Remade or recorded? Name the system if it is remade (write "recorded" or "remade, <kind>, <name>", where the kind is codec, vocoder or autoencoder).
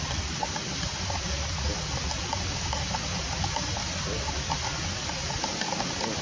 recorded